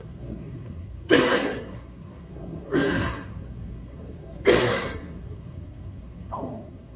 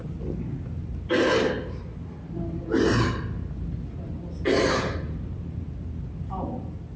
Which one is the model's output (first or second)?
first